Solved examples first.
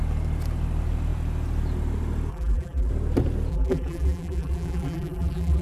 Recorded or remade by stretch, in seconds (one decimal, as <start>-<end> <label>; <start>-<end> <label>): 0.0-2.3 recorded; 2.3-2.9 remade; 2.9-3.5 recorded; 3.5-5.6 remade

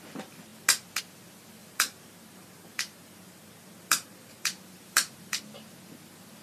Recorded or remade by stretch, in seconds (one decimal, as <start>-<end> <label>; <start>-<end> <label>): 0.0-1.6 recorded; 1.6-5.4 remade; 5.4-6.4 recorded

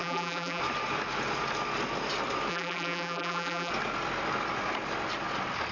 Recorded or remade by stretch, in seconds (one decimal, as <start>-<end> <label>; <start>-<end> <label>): 0.0-0.6 remade; 0.6-2.5 recorded; 2.5-3.7 remade; 3.7-5.7 recorded

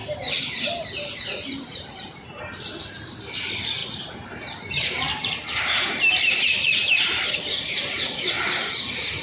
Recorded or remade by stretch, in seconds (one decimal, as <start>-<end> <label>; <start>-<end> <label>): 0.0-2.4 remade; 2.4-3.8 recorded; 3.8-6.0 remade; 6.0-6.8 recorded; 6.8-8.3 remade; 8.3-9.2 recorded

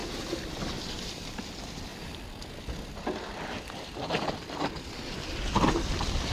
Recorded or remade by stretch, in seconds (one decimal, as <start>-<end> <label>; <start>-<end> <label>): 0.0-1.9 remade; 1.9-5.7 recorded; 5.7-6.3 remade

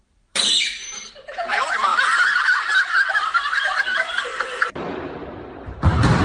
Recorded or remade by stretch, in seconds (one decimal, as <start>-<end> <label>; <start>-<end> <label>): 0.0-1.9 remade; 1.9-3.1 recorded; 3.1-4.3 remade; 4.3-5.1 recorded; 5.1-6.2 remade